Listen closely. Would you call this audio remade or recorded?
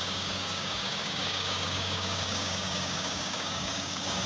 remade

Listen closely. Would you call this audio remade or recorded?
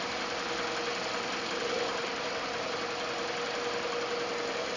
recorded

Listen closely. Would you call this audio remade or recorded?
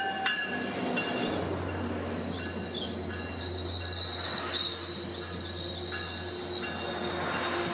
recorded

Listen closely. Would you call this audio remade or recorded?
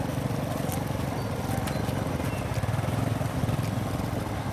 recorded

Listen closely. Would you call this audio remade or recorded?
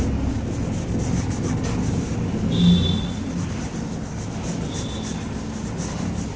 recorded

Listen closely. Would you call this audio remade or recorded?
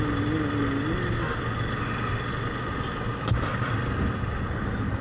recorded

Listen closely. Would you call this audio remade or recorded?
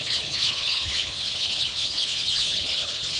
remade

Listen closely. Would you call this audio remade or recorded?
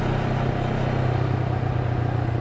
recorded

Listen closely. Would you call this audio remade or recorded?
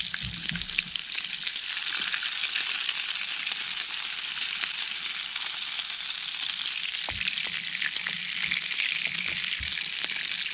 recorded